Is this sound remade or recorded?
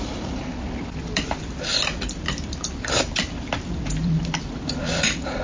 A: remade